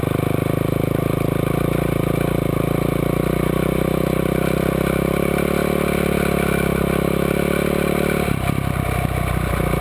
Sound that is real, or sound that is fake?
real